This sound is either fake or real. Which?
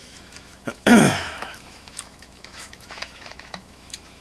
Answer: fake